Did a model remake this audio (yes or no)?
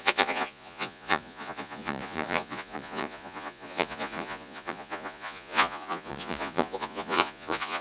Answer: yes